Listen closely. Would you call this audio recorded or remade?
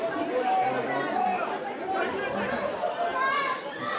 recorded